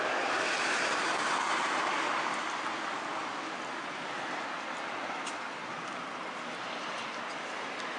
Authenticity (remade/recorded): recorded